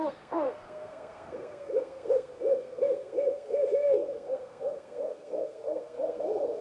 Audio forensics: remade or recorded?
remade